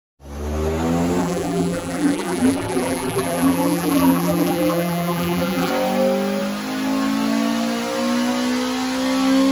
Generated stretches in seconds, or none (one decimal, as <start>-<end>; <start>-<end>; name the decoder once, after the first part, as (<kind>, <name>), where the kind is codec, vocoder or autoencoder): 1.2-5.7 (vocoder, BigVGAN v2)